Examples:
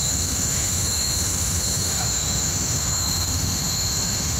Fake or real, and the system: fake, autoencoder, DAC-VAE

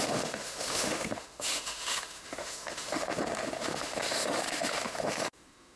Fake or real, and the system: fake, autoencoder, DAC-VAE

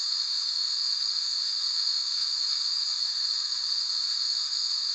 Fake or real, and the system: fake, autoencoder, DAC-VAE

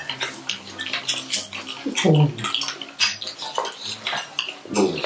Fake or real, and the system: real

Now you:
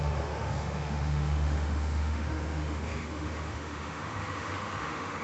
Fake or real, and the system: fake, autoencoder, DAC-VAE